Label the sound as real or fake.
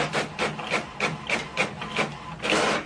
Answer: real